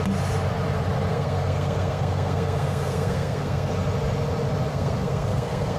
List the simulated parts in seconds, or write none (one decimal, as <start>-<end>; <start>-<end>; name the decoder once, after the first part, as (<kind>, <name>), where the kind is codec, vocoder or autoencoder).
1.1-3.7 (codec, SNAC); 4.7-5.8